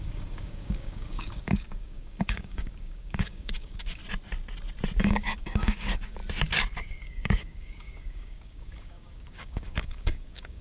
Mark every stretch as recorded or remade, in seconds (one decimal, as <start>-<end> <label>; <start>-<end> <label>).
0.0-4.0 remade; 4.0-5.0 recorded; 5.0-6.2 remade; 6.2-6.8 recorded; 6.8-10.6 remade